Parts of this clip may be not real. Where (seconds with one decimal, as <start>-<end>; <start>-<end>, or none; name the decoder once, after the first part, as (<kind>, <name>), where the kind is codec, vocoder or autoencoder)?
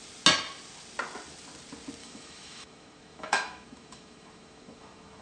2.0-5.2 (autoencoder, DAC-VAE)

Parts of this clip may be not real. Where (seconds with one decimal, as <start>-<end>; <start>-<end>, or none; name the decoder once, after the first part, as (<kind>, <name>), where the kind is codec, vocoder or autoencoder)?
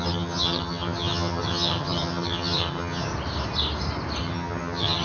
0.0-3.1 (vocoder, HiFi-GAN); 4.2-5.0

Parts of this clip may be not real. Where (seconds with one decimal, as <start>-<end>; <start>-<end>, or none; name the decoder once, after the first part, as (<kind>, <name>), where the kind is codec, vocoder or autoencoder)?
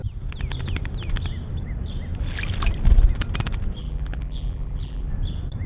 3.8-5.1 (vocoder, BigVGAN v2)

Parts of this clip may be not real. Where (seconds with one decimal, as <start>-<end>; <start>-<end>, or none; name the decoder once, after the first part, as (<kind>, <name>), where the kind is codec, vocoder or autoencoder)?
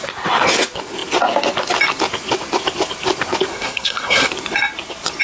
3.5-4.3 (codec, SNAC)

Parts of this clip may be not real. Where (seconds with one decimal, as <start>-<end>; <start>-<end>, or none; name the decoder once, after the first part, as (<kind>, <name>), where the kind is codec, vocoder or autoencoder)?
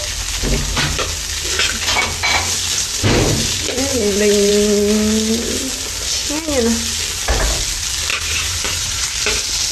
3.9-4.5 (vocoder, BigVGAN v2); 8.1-9.1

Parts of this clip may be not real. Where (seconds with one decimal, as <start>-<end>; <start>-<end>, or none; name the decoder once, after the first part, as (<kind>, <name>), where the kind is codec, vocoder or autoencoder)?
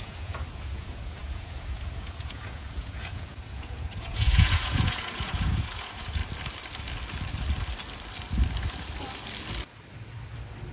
0.0-6.2 (vocoder, Vocos)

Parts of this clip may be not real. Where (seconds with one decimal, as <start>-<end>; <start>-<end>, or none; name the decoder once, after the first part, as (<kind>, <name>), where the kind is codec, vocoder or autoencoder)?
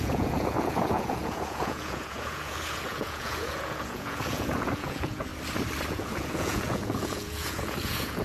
0.0-5.3 (vocoder, Vocos); 5.9-8.2